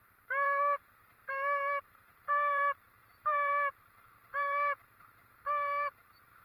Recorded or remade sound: remade